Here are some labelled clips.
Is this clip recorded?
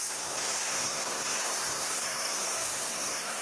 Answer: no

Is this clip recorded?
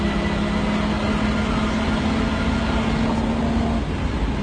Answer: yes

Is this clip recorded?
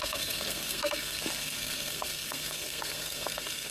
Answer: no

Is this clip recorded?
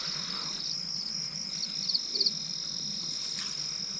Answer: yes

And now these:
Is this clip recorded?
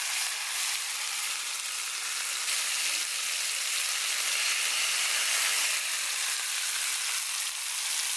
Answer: yes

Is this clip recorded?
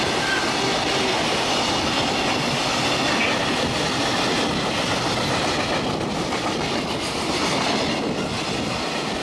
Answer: yes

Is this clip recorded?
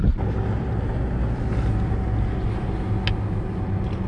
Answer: yes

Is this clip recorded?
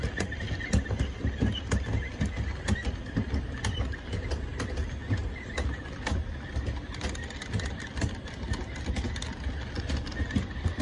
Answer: yes